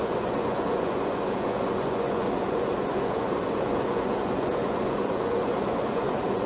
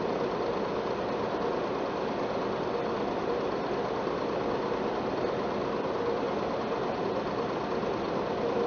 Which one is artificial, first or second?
first